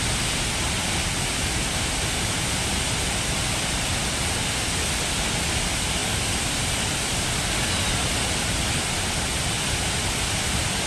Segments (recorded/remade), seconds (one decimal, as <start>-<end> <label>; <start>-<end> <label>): 0.0-10.9 recorded